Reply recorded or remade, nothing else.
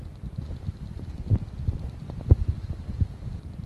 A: recorded